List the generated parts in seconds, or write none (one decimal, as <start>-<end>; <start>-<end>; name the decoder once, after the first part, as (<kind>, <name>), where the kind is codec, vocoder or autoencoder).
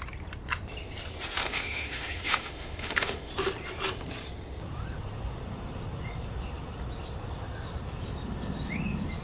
1.4-3.3 (autoencoder, DAC-VAE)